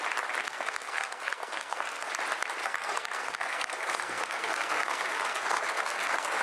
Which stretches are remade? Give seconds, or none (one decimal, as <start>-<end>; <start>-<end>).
0.4-2.1; 2.6-6.4